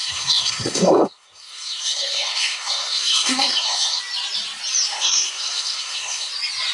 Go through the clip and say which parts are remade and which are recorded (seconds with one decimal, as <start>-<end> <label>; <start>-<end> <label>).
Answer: 0.0-4.0 remade; 4.0-4.9 recorded; 4.9-6.3 remade; 6.3-6.7 recorded